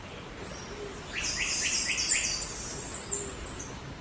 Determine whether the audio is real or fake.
real